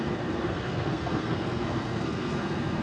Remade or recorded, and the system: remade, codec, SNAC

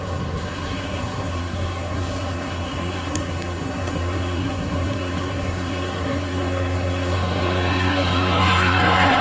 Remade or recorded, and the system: remade, codec, SNAC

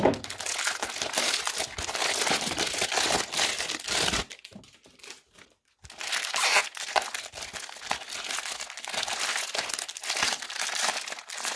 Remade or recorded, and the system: recorded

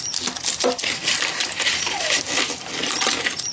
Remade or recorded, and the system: recorded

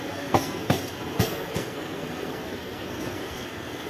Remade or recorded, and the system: remade, codec, SNAC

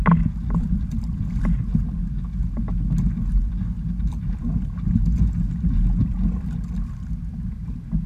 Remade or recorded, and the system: recorded